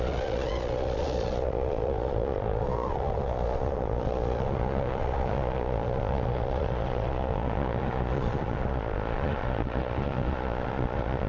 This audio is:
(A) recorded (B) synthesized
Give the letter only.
B